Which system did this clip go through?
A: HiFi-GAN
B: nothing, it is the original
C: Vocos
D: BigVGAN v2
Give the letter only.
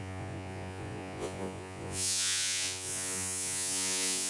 C